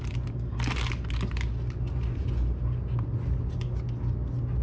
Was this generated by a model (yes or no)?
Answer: no